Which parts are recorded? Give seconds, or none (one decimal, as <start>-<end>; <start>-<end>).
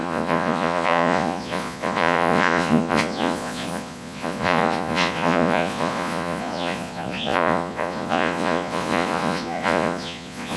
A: none